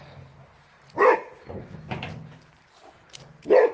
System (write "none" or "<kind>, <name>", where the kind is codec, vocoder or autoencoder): none